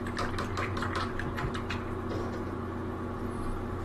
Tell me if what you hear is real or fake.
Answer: real